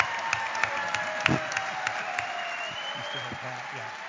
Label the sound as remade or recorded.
recorded